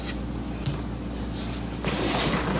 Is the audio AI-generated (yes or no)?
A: no